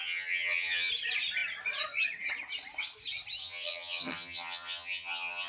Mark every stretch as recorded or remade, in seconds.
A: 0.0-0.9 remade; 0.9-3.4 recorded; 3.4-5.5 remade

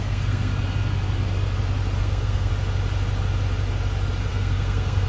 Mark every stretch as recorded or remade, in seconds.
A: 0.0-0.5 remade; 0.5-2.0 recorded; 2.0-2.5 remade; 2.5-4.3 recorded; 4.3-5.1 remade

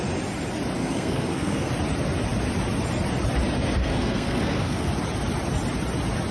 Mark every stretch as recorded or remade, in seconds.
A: 0.0-0.8 recorded; 0.8-1.7 remade; 1.7-3.8 recorded; 3.8-4.9 remade; 4.9-6.3 recorded

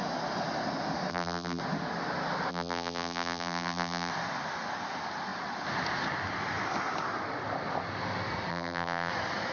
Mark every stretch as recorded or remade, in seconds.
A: 0.0-1.1 recorded; 1.1-1.6 remade; 1.6-2.5 recorded; 2.5-4.1 remade; 4.1-8.5 recorded; 8.5-9.1 remade; 9.1-9.5 recorded

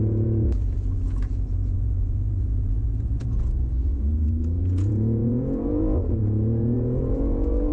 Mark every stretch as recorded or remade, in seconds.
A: 0.0-7.7 remade

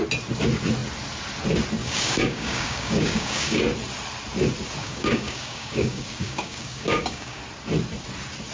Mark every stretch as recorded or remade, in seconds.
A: 0.0-1.8 recorded; 1.8-3.6 remade; 3.6-4.8 recorded; 4.8-7.4 remade; 7.4-8.5 recorded

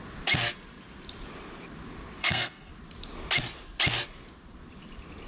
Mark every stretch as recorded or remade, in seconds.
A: 0.0-2.2 recorded; 2.2-2.7 remade; 2.7-5.3 recorded

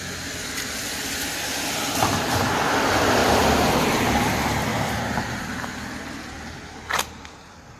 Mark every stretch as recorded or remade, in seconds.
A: 0.0-3.2 recorded; 3.2-3.7 remade; 3.7-4.7 recorded; 4.7-5.4 remade; 5.4-7.8 recorded